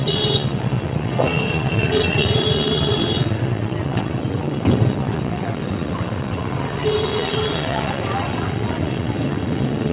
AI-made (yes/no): yes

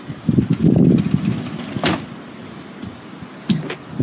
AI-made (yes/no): no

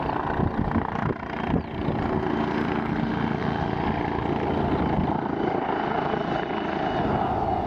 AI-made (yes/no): no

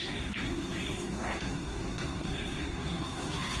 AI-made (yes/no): yes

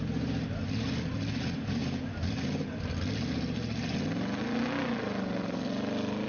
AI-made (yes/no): no